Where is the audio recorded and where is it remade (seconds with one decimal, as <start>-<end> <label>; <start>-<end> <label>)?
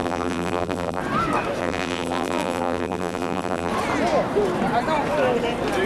0.0-1.0 remade; 1.0-1.6 recorded; 1.6-3.7 remade; 3.7-5.9 recorded